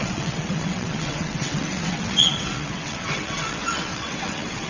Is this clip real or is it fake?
fake